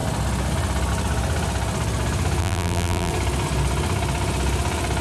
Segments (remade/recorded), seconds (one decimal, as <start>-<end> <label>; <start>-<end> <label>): 0.0-2.4 recorded; 2.4-3.1 remade; 3.1-5.0 recorded